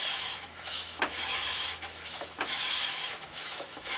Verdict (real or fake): fake